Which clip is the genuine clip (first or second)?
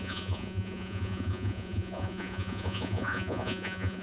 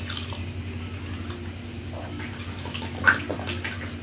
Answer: second